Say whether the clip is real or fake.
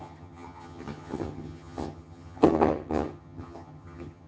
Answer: fake